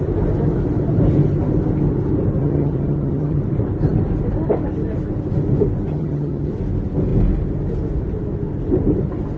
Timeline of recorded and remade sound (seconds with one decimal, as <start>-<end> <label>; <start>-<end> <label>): 0.0-2.4 recorded; 2.4-3.4 remade; 3.4-5.9 recorded; 5.9-6.5 remade; 6.5-9.4 recorded